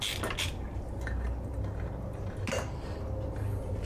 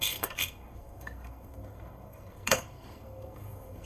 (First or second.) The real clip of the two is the first